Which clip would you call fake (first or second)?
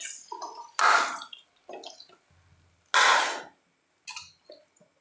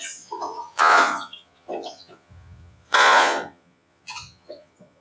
second